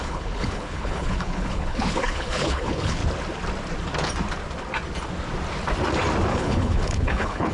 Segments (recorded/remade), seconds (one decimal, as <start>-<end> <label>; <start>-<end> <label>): 0.0-3.0 remade; 3.0-6.3 recorded; 6.3-7.5 remade